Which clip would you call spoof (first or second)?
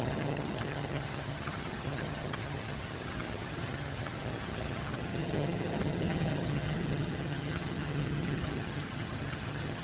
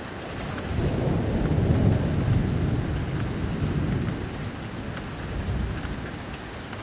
first